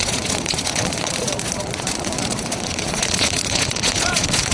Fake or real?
fake